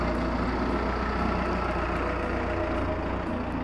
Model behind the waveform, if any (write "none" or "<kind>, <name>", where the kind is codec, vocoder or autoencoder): none